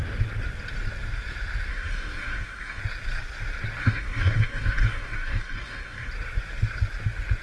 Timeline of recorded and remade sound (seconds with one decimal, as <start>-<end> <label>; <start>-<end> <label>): 0.0-1.7 recorded; 1.7-2.8 remade; 2.8-3.8 recorded; 3.8-6.1 remade; 6.1-7.4 recorded